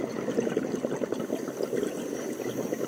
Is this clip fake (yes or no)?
no